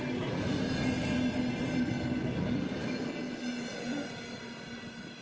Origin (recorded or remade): recorded